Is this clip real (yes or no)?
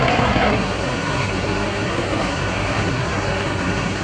no